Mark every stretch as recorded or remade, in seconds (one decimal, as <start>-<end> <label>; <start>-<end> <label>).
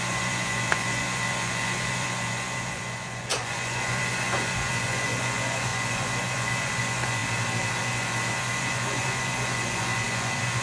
0.0-7.2 remade; 7.2-7.8 recorded; 7.8-10.6 remade